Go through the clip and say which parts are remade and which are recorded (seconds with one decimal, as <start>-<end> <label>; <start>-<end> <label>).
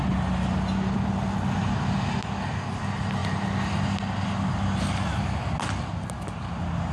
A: 0.0-6.9 recorded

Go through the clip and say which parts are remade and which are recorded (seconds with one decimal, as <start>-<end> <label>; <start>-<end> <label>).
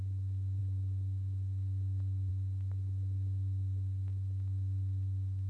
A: 0.0-5.5 recorded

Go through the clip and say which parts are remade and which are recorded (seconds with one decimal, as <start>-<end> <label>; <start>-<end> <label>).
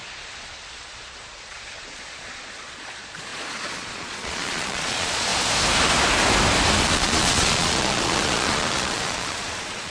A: 0.0-5.3 remade; 5.3-6.8 recorded; 6.8-9.9 remade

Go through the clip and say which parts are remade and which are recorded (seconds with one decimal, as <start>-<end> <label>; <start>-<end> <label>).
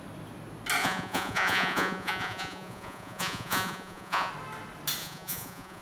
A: 0.0-0.8 recorded; 0.8-4.3 remade; 4.3-5.0 recorded; 5.0-5.8 remade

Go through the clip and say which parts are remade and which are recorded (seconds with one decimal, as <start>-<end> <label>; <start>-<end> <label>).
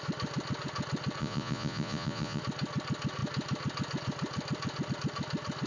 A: 0.0-1.2 recorded; 1.2-2.4 remade; 2.4-5.7 recorded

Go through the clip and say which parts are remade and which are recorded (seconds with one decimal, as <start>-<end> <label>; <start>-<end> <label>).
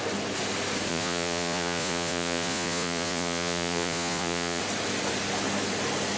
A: 0.0-0.9 recorded; 0.9-4.6 remade; 4.6-6.2 recorded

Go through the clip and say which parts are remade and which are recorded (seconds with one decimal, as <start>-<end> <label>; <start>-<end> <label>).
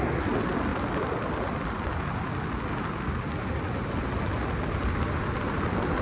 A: 0.0-6.0 recorded